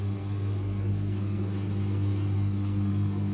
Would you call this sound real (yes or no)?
no